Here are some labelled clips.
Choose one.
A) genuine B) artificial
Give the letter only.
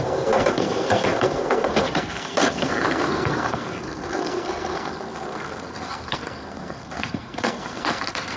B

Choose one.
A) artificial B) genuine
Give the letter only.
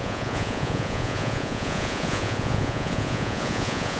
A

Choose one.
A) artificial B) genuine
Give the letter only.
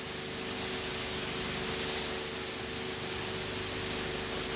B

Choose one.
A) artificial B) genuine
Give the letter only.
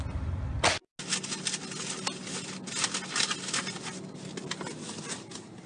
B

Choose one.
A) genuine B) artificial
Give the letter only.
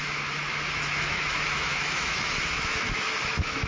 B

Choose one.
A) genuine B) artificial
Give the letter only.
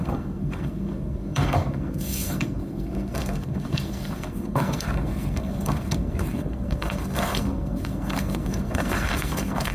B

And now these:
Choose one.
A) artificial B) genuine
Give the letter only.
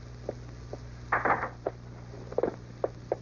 B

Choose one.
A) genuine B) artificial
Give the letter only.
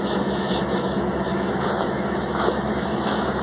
B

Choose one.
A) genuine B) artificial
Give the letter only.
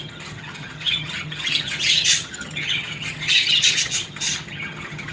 B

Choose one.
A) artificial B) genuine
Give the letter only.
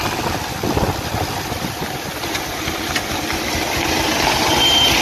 B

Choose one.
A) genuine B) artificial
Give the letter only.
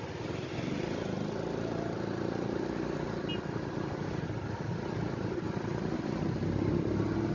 A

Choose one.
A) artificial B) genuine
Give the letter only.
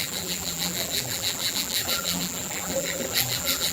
A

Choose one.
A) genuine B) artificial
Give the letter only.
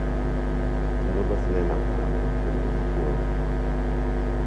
A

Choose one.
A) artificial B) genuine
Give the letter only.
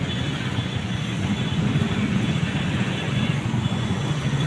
A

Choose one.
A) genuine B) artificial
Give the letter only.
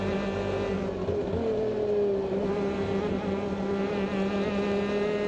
A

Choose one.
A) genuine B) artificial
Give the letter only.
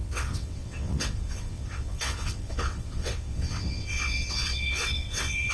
B